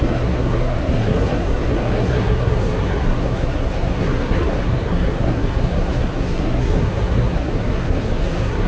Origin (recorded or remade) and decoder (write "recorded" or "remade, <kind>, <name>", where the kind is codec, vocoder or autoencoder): remade, codec, SNAC